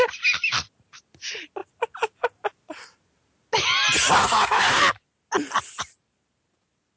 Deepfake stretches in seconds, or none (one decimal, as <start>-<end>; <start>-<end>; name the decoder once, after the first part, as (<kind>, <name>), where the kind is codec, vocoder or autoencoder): 4.2-4.8 (codec, SNAC)